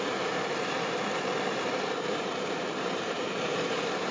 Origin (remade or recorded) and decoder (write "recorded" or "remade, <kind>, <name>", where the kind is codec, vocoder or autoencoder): remade, vocoder, BigVGAN v2